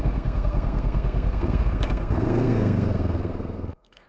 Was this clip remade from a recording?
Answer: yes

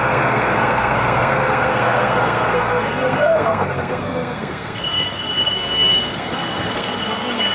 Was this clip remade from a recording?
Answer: yes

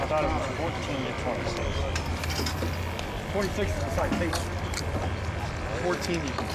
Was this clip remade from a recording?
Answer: no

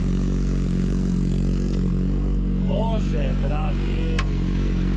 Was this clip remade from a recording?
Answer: yes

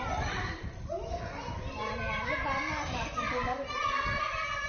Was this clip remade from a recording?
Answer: no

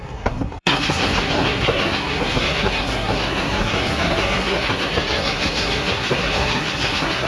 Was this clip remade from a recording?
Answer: yes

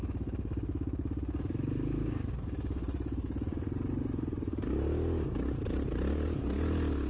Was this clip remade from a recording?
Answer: no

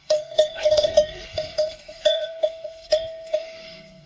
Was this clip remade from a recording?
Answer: yes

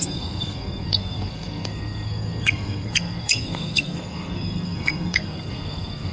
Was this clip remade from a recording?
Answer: yes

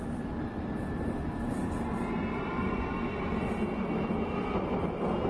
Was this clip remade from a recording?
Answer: no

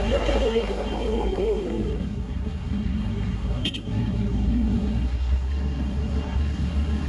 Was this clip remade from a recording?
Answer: yes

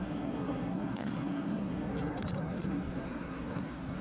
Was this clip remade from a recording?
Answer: yes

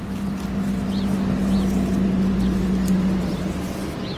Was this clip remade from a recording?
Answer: no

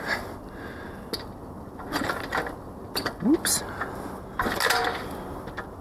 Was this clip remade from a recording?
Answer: no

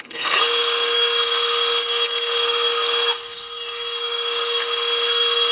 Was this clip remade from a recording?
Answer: yes